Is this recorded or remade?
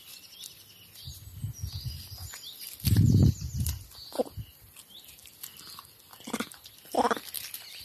recorded